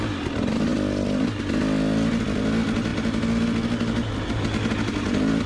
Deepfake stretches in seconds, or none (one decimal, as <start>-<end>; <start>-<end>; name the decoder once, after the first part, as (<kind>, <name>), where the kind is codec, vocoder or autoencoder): none